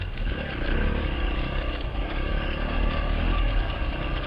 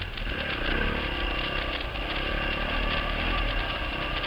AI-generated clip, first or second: first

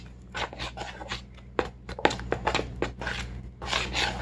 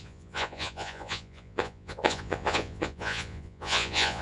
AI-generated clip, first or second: second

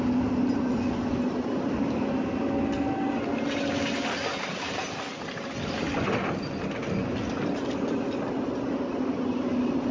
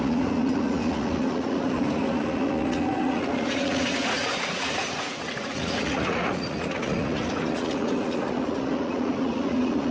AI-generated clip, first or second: second